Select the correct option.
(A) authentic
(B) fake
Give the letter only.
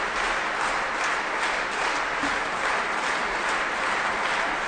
A